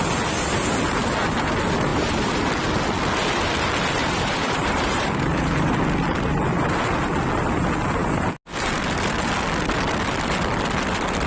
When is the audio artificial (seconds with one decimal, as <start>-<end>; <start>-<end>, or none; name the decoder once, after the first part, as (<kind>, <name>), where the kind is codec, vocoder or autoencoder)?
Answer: 1.9-2.4 (vocoder, BigVGAN v2); 4.0-5.8